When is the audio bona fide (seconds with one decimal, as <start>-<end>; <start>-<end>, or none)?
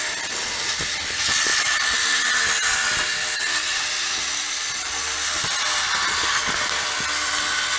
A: 0.0-7.8